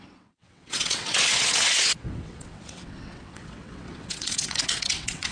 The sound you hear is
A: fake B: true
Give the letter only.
A